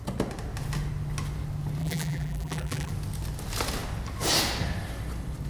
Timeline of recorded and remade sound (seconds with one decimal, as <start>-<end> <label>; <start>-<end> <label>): 0.0-1.8 recorded; 1.8-2.9 remade; 2.9-5.5 recorded